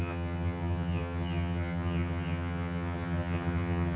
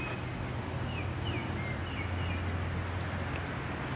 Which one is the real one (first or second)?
second